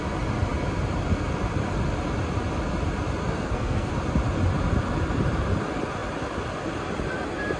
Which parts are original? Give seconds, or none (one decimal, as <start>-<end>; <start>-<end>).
0.0-3.2; 3.9-7.6